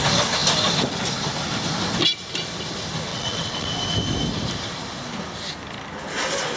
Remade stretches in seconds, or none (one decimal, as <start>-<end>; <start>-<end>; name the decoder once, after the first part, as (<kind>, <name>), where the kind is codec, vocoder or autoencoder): 3.1-3.7 (vocoder, WaveNeXt)